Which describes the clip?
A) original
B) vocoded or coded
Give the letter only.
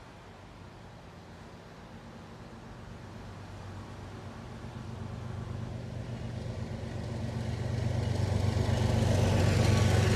A